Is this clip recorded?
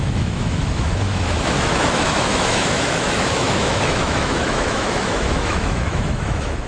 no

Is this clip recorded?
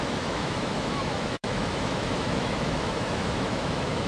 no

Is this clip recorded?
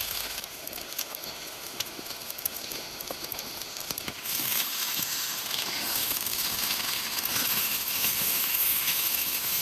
no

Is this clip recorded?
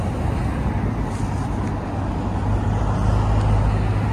yes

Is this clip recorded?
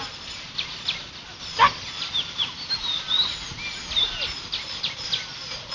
yes